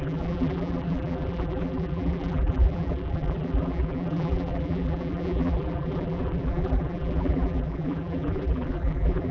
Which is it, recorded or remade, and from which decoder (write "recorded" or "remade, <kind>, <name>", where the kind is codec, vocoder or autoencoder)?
remade, vocoder, BigVGAN v2